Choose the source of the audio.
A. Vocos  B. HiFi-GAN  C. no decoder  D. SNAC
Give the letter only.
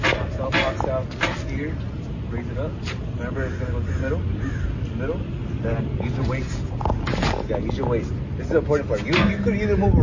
C